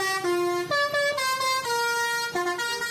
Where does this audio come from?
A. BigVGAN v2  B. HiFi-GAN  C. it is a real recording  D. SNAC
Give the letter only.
C